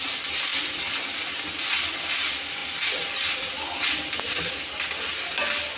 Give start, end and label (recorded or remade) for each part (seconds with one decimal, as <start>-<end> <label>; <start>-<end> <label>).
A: 0.0-5.8 recorded